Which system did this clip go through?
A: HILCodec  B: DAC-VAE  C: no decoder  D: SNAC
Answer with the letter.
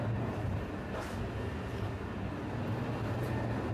C